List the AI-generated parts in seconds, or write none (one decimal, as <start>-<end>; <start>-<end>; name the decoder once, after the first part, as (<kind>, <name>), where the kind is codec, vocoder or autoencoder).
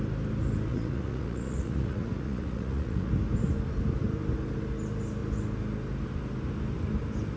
0.7-3.1 (vocoder, Vocos)